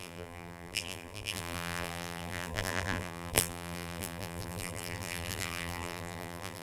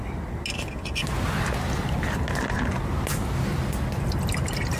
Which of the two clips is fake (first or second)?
first